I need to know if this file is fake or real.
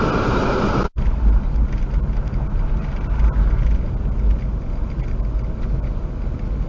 real